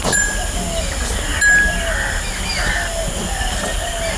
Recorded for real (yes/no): yes